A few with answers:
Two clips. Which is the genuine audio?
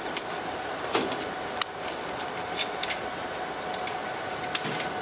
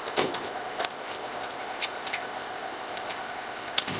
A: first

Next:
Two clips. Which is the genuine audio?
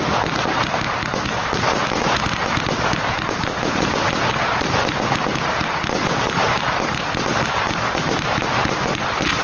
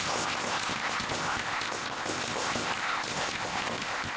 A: first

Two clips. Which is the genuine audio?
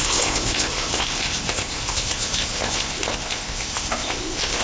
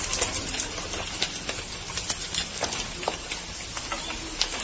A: second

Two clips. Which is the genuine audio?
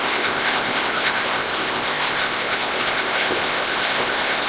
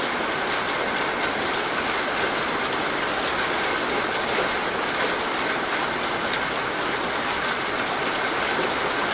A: second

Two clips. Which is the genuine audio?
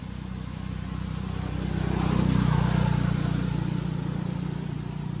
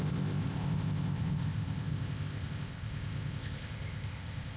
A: first